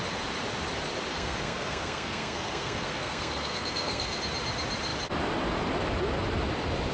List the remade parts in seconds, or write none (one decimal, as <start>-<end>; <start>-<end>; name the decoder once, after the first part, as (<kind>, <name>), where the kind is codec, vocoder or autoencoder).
1.1-4.2 (codec, SNAC)